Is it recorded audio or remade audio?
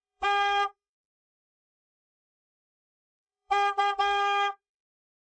remade